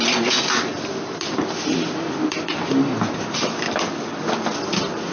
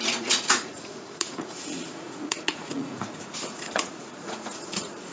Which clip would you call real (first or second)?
first